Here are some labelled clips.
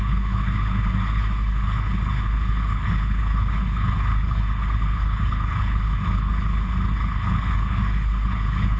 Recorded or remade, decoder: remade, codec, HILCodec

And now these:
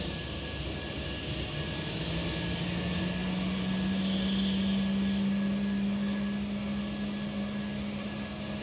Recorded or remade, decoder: recorded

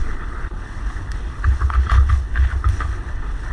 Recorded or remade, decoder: remade, codec, HILCodec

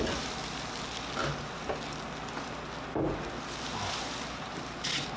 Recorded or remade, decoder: recorded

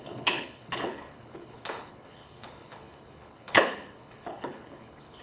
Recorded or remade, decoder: remade, codec, HILCodec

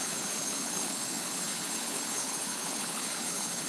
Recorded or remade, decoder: remade, codec, HILCodec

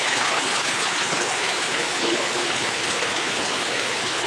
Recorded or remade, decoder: remade, codec, HILCodec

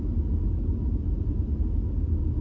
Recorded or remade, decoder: recorded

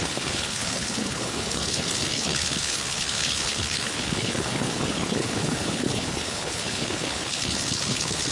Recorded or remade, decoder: remade, codec, HILCodec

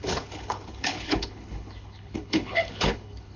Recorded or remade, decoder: remade, codec, HILCodec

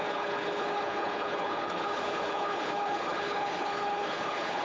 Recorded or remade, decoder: remade, codec, HILCodec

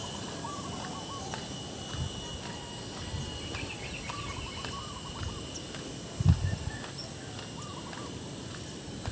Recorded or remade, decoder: recorded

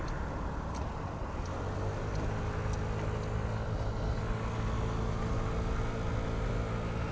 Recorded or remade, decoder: recorded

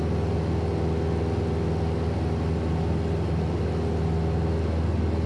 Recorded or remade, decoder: recorded